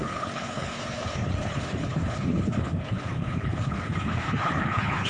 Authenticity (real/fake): fake